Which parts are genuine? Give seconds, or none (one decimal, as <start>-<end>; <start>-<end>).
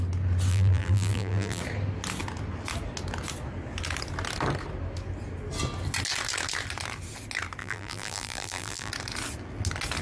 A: 0.0-0.5; 1.6-7.6; 8.9-10.0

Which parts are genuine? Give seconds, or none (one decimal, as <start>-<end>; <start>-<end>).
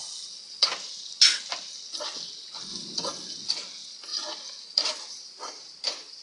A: 0.0-4.1; 5.4-6.2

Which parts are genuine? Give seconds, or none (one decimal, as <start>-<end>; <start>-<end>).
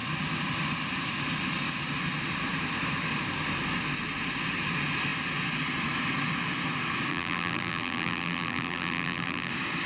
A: 0.0-7.1; 9.5-9.9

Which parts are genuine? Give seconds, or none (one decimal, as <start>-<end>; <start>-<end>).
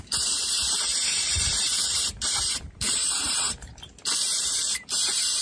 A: 3.7-4.3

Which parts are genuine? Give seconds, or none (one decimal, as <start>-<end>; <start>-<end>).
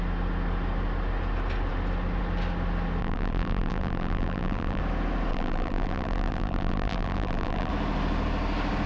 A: 0.0-3.0; 4.8-5.3; 7.7-8.9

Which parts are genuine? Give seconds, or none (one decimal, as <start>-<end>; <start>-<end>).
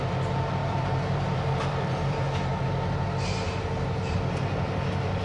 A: 0.0-0.6; 2.6-5.2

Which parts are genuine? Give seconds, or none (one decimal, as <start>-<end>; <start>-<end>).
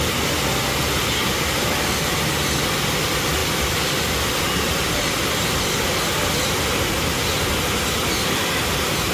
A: 0.0-3.4; 4.2-9.1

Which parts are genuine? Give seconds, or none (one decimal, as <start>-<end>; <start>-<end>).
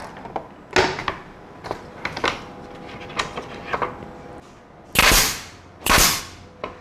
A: 0.0-5.0; 6.2-6.8